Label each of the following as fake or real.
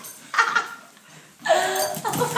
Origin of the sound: real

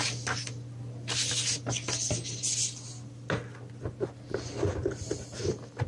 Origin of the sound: real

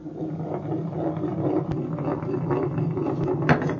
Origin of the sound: real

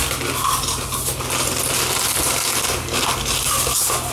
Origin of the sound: real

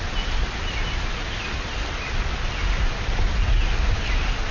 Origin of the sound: real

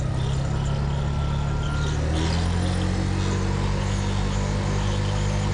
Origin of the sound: real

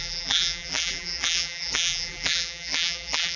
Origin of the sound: fake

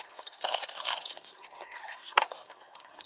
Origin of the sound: fake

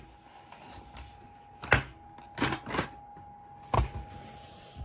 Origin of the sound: real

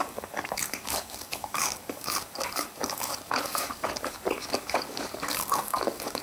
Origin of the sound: fake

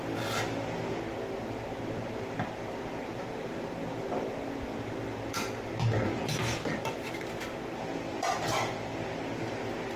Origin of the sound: real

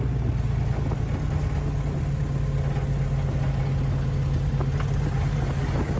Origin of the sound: real